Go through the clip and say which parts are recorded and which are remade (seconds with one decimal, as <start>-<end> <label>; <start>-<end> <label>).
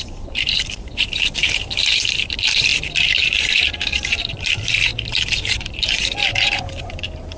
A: 0.0-7.4 remade